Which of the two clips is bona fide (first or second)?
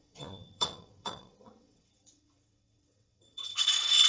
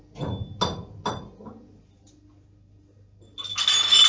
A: second